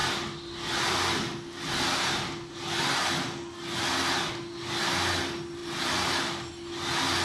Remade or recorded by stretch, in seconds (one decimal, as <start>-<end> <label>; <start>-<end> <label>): 0.0-7.2 recorded